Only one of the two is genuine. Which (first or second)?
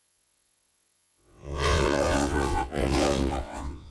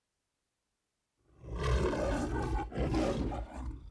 second